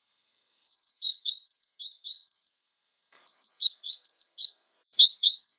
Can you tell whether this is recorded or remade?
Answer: remade